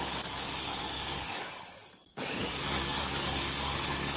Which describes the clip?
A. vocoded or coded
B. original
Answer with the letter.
A